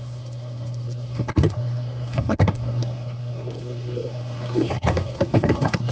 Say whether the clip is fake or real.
fake